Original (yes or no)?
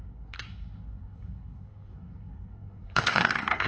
no